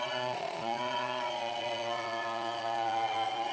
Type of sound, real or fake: fake